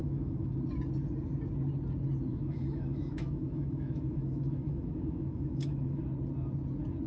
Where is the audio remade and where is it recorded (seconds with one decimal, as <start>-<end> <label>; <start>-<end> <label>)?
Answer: 0.0-0.5 remade; 0.5-2.3 recorded; 2.3-6.0 remade; 6.0-7.1 recorded